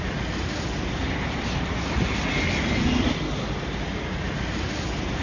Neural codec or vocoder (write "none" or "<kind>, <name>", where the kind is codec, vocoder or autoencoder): none